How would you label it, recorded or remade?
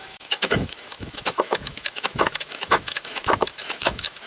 remade